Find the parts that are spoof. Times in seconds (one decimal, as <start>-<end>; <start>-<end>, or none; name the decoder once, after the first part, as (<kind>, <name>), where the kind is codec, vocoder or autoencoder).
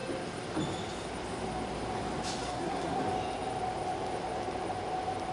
2.4-3.0 (codec, SNAC)